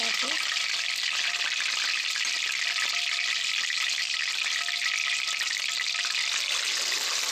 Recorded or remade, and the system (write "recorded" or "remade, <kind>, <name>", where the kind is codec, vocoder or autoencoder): recorded